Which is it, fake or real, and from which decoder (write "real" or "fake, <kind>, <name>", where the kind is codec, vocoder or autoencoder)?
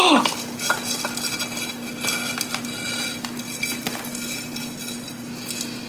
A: real